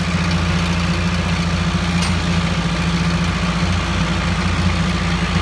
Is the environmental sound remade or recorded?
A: recorded